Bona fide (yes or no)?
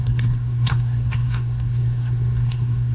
no